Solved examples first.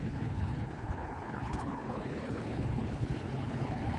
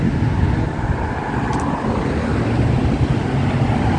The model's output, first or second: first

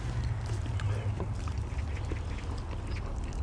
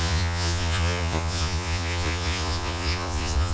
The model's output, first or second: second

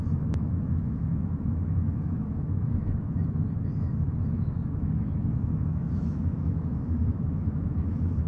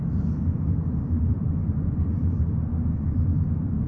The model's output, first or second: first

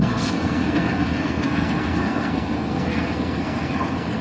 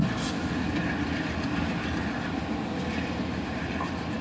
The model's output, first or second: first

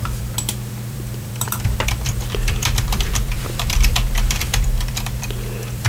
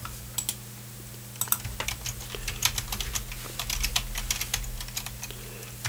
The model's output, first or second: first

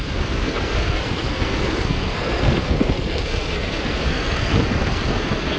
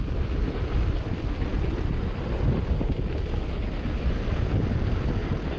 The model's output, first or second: first